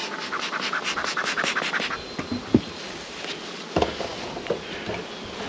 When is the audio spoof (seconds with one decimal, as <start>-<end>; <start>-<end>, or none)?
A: none